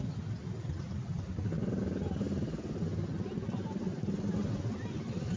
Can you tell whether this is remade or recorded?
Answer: recorded